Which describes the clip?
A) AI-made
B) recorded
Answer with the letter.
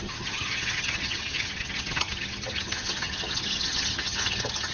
A